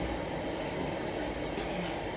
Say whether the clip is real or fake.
real